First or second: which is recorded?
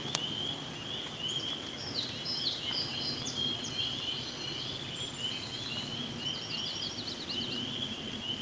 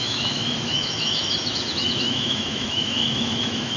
first